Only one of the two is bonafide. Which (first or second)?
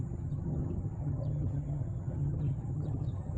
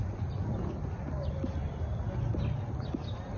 second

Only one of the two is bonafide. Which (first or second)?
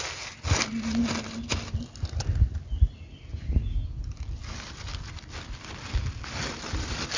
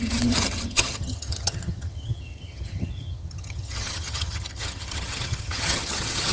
first